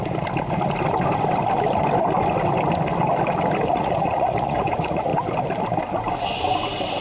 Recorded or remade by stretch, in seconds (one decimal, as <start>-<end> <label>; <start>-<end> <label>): 0.0-3.7 recorded; 3.7-5.1 remade; 5.1-7.0 recorded

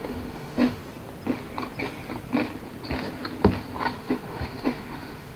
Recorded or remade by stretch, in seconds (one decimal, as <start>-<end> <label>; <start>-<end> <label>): 0.0-0.8 remade; 0.8-4.0 recorded; 4.0-5.4 remade

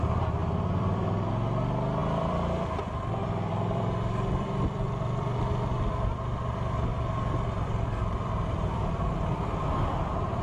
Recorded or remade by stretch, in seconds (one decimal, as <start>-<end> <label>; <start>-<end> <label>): 0.0-0.4 recorded; 0.4-1.3 remade; 1.3-2.0 recorded; 2.0-5.4 remade; 5.4-6.9 recorded; 6.9-10.4 remade

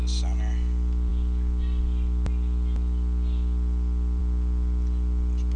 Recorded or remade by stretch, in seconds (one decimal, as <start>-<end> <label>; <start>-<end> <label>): 0.0-5.6 recorded